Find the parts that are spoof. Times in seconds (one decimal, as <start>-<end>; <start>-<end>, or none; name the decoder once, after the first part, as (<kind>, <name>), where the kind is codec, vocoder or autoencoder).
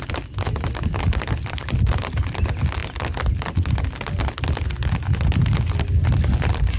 none